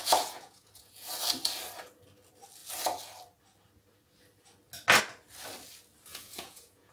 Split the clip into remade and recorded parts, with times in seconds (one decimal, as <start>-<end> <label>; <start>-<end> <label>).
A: 0.0-1.1 remade; 1.1-6.1 recorded; 6.1-6.9 remade